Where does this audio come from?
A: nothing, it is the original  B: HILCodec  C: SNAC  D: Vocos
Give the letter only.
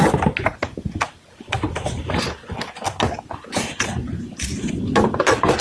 A